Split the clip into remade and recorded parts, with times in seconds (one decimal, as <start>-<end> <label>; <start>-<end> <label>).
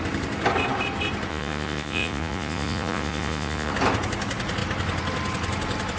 0.0-1.3 recorded; 1.3-3.7 remade; 3.7-6.0 recorded